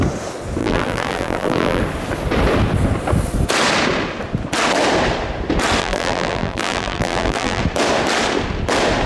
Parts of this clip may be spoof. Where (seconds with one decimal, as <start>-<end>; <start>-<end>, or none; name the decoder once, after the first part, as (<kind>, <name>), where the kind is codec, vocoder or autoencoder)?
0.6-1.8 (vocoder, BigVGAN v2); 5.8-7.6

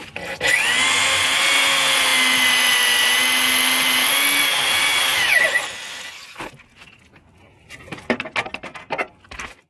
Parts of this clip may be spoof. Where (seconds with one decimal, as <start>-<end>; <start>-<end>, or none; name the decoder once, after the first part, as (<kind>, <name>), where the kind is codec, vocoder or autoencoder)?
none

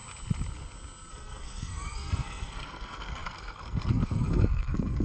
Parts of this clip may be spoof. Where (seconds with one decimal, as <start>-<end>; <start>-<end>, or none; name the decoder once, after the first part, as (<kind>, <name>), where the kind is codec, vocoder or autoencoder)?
1.1-5.0 (codec, SNAC)

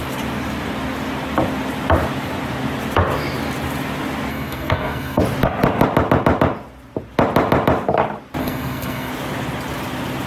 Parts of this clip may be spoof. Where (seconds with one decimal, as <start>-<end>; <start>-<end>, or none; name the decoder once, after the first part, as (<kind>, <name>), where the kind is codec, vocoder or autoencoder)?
4.3-5.2 (codec, SNAC); 8.4-9.1